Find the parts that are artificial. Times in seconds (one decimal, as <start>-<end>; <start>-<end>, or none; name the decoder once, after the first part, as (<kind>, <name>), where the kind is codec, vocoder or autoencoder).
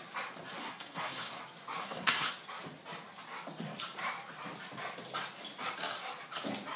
0.6-1.4 (codec, SNAC); 1.8-2.3